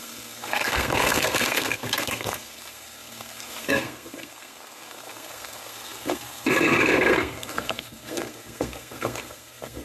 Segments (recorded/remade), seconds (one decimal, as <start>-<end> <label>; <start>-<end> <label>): 0.0-9.8 remade